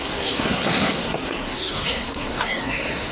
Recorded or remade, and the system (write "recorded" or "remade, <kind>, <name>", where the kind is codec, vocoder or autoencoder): remade, codec, SNAC